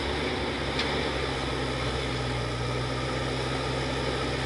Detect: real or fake real